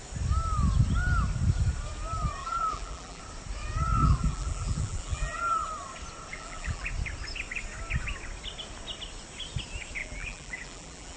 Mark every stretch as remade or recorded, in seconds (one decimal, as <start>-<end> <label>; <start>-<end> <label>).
0.0-2.4 recorded; 2.4-3.2 remade; 3.2-4.0 recorded; 4.0-5.4 remade; 5.4-6.3 recorded; 6.3-6.9 remade; 6.9-10.0 recorded; 10.0-11.2 remade

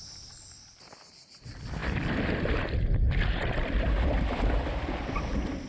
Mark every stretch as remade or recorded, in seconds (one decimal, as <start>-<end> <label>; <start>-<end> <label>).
0.0-5.7 remade

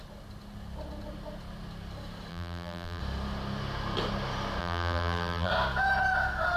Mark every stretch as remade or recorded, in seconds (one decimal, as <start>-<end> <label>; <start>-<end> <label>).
0.0-2.3 recorded; 2.3-3.0 remade; 3.0-4.6 recorded; 4.6-5.5 remade; 5.5-6.6 recorded